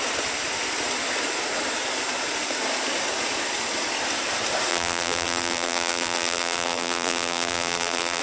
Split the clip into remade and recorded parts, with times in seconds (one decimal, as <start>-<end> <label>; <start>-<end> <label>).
0.0-4.7 recorded; 4.7-8.2 remade